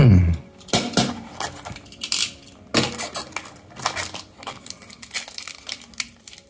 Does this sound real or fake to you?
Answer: real